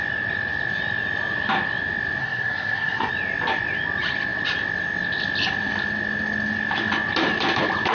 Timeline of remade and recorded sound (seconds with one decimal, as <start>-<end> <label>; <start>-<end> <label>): 0.0-2.2 recorded; 2.2-3.1 remade; 3.1-7.9 recorded